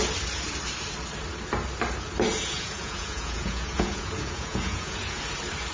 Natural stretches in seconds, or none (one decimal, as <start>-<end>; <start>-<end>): 0.0-2.3; 5.2-5.7